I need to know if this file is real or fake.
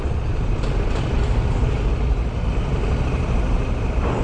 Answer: real